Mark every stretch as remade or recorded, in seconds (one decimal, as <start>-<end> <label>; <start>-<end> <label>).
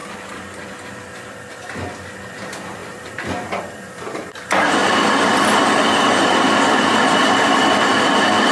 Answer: 0.0-2.8 recorded; 2.8-3.6 remade; 3.6-4.8 recorded; 4.8-7.8 remade; 7.8-8.5 recorded